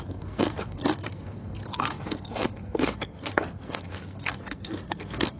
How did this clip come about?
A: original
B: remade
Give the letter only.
B